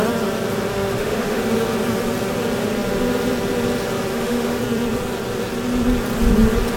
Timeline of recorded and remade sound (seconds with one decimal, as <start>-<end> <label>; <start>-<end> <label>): 0.0-0.7 recorded; 0.7-1.4 remade; 1.4-4.1 recorded; 4.1-4.6 remade; 4.6-6.8 recorded